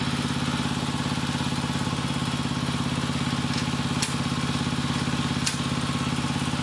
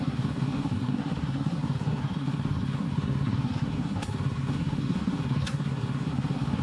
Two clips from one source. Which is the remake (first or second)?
second